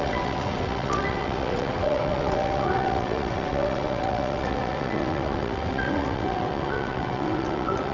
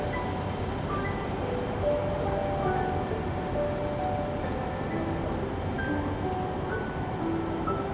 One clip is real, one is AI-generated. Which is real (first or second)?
second